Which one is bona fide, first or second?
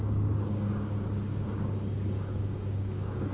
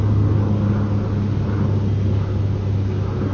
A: second